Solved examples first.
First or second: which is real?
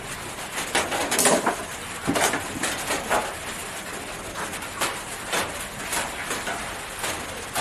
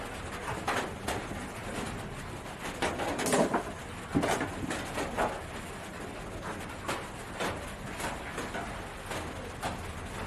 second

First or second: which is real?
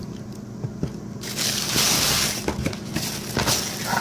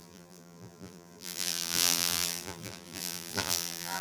first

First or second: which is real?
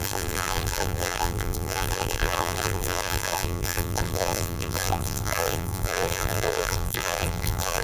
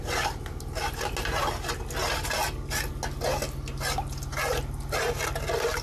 second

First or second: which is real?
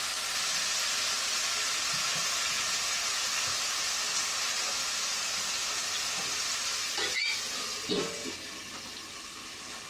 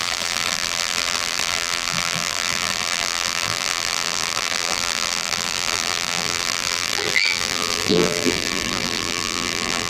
first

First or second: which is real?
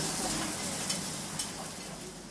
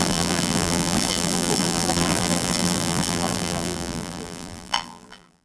first